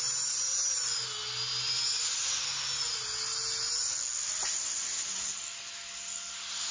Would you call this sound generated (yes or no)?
no